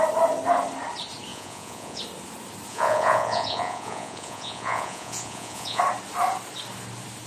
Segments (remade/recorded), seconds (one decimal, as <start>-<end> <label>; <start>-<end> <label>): 0.0-1.3 recorded; 1.3-2.0 remade; 2.0-2.7 recorded; 2.7-5.8 remade; 5.8-7.3 recorded